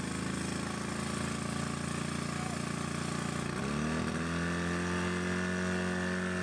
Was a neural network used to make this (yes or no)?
no